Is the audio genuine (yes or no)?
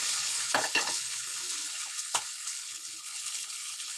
no